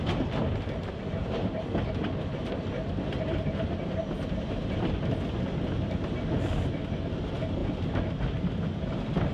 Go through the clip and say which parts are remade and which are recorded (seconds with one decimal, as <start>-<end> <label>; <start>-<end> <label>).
0.0-1.2 recorded; 1.2-5.5 remade; 5.5-9.3 recorded

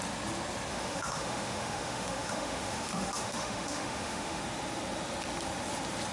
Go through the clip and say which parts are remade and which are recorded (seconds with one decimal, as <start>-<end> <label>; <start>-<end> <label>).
0.0-0.7 recorded; 0.7-4.4 remade; 4.4-6.1 recorded